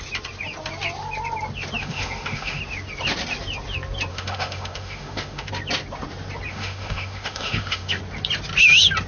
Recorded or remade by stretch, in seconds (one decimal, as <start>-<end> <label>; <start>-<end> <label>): 0.0-1.8 recorded; 1.8-2.6 remade; 2.6-4.1 recorded; 4.1-5.5 remade; 5.5-6.5 recorded; 6.5-8.0 remade; 8.0-9.1 recorded